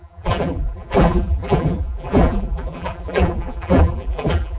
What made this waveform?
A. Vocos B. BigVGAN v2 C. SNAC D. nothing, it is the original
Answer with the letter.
B